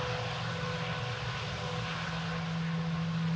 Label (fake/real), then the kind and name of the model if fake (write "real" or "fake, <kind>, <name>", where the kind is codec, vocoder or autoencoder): real